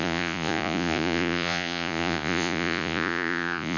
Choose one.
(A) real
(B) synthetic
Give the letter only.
B